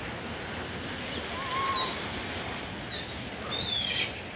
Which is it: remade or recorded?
recorded